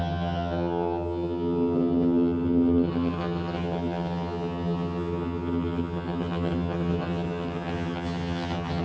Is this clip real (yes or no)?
no